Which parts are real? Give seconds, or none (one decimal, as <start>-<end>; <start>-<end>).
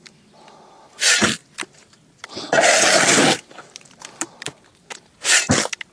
0.0-5.9